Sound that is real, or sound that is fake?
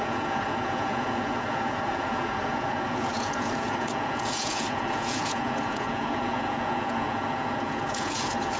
fake